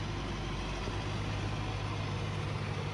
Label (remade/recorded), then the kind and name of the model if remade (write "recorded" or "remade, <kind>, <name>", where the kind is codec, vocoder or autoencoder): recorded